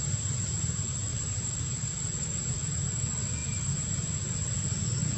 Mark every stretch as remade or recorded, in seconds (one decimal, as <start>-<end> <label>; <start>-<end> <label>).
0.0-1.1 recorded; 1.1-2.6 remade; 2.6-3.4 recorded; 3.4-4.1 remade; 4.1-5.2 recorded